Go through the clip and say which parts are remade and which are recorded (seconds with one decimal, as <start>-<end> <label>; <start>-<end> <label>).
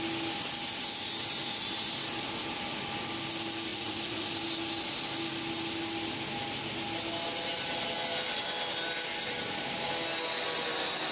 0.0-3.7 recorded; 3.7-4.3 remade; 4.3-11.1 recorded